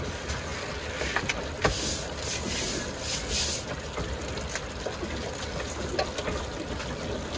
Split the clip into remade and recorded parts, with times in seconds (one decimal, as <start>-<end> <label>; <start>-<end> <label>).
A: 0.0-7.4 recorded